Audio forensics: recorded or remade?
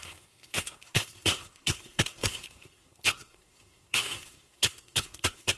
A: remade